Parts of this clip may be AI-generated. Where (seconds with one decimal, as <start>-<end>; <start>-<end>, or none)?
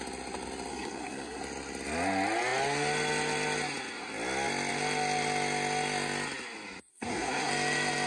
0.7-1.4; 6.9-7.5